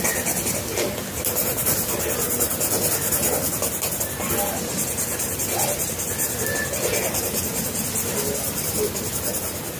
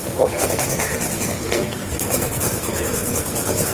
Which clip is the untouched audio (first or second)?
first